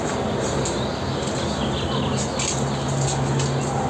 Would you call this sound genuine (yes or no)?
yes